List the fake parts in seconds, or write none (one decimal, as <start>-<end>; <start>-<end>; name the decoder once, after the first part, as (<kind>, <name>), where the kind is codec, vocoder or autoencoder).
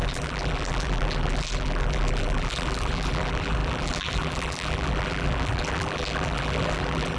0.0-7.2 (vocoder, BigVGAN v2)